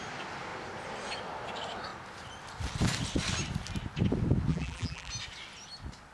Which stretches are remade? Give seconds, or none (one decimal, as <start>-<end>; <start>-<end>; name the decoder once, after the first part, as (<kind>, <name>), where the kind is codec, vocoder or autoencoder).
4.5-5.1 (vocoder, BigVGAN v2)